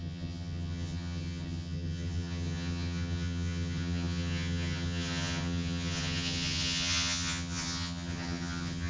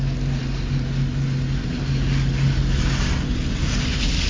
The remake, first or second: first